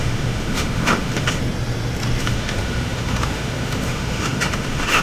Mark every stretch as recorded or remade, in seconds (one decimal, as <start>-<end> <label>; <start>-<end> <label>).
0.0-1.4 remade; 1.4-2.2 recorded; 2.2-5.0 remade